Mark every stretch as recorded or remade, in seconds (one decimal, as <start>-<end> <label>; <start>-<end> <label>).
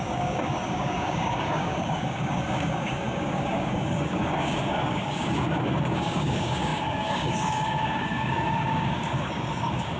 0.0-10.0 remade